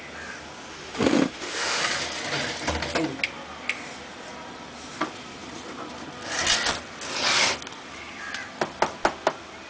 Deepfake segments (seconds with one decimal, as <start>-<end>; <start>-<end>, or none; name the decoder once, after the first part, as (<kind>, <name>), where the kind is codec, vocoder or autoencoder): 0.7-1.8 (autoencoder, DAC-VAE)